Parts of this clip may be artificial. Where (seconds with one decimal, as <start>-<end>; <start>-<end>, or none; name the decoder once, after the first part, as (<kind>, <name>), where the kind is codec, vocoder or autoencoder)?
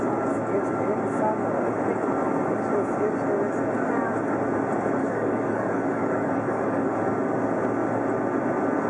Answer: 5.0-7.0 (codec, DAC)